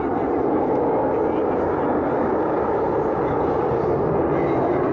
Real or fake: real